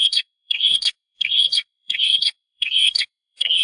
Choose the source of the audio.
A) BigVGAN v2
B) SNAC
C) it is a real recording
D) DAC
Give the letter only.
B